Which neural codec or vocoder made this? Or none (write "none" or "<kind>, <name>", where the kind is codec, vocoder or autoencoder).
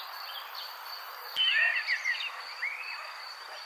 vocoder, BigVGAN v2